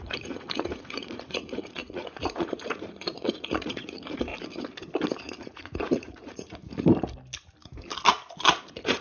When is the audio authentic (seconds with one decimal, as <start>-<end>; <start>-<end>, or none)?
4.3-5.4; 6.6-8.6